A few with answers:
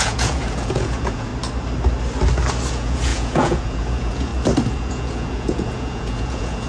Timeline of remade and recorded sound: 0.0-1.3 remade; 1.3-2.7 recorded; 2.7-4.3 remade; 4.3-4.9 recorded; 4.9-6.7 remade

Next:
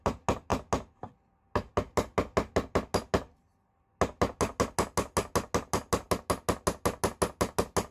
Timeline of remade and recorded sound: 0.0-7.9 recorded